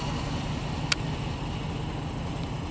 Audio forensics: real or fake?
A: real